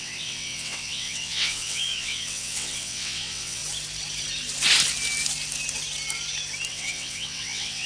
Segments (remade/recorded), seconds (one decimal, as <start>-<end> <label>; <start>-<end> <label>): 0.0-3.6 remade; 3.6-6.7 recorded; 6.7-7.9 remade